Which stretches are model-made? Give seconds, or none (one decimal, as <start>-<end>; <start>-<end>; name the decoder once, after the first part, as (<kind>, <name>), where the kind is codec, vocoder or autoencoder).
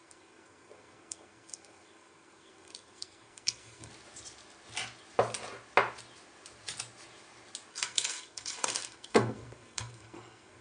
0.0-3.9 (codec, SNAC); 7.7-10.6